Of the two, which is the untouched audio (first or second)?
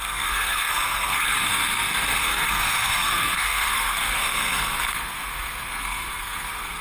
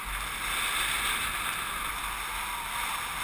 second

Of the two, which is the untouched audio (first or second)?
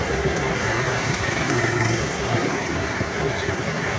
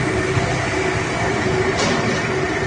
second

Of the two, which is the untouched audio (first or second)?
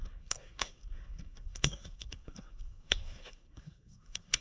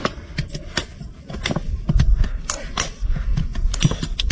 second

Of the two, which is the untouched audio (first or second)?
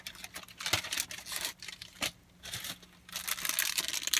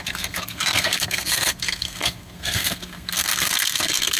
first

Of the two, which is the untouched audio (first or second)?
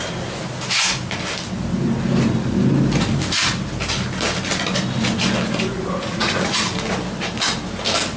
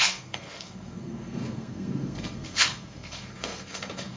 first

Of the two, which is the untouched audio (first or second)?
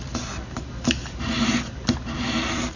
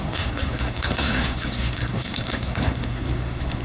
first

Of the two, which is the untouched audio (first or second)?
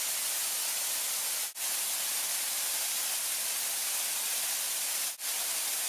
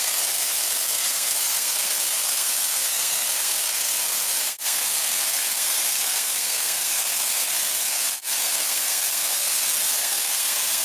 first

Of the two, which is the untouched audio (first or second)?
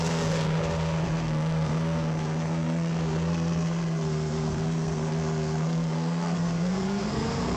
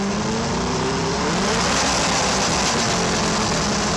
second